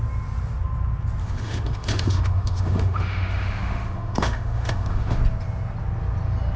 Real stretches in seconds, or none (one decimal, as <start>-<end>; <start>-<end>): 0.0-1.2; 5.2-6.6